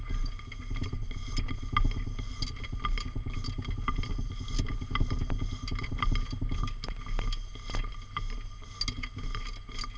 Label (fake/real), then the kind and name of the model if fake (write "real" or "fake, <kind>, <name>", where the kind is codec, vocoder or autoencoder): real